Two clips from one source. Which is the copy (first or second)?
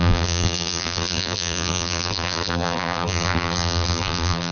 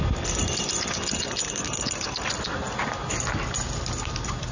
first